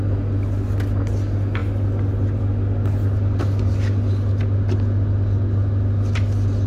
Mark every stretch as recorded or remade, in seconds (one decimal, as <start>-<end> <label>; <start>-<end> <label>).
0.0-6.7 recorded